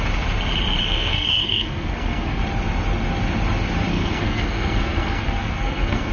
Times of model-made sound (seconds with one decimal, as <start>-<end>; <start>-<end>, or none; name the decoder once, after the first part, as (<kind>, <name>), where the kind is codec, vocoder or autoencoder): 0.8-2.4 (codec, SNAC); 3.9-6.1